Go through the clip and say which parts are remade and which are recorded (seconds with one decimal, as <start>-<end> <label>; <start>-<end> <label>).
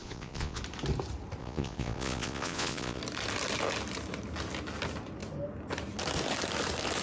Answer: 0.0-0.6 remade; 0.6-1.4 recorded; 1.4-3.0 remade; 3.0-7.0 recorded